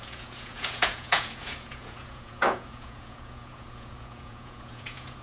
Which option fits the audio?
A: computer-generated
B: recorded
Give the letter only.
A